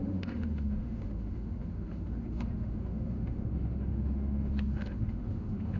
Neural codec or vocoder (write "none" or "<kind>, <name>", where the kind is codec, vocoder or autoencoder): autoencoder, DAC-VAE